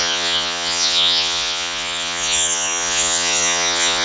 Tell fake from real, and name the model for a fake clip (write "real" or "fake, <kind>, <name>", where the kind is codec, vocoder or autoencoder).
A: fake, vocoder, Vocos